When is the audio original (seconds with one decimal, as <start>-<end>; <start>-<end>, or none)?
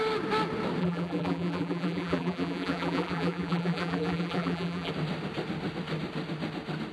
0.0-0.8; 4.9-6.9